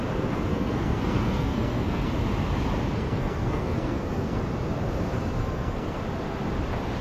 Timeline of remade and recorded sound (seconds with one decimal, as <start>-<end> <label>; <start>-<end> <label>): 0.0-0.5 recorded; 0.5-2.1 remade; 2.1-2.9 recorded; 2.9-4.4 remade; 4.4-5.4 recorded; 5.4-6.0 remade; 6.0-7.0 recorded